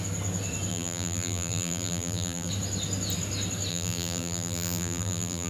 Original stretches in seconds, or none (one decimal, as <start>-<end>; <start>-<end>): 0.0-0.7; 2.5-3.7